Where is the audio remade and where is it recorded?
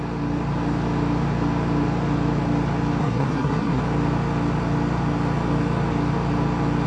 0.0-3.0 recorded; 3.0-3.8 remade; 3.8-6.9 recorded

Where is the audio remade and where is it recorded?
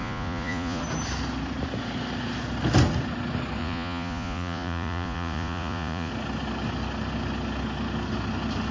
0.0-0.8 remade; 0.8-3.6 recorded; 3.6-6.1 remade; 6.1-8.7 recorded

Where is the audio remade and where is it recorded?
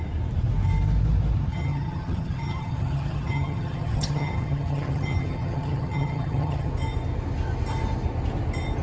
0.0-1.5 recorded; 1.5-6.7 remade; 6.7-8.8 recorded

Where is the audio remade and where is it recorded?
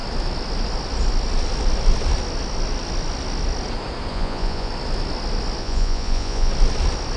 0.0-4.1 recorded; 4.1-4.7 remade; 4.7-5.6 recorded; 5.6-6.5 remade; 6.5-7.2 recorded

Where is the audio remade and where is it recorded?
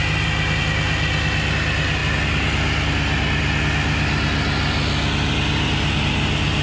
0.0-6.6 recorded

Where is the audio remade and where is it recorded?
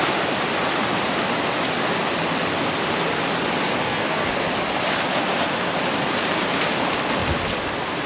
0.0-3.8 recorded; 3.8-4.3 remade; 4.3-8.1 recorded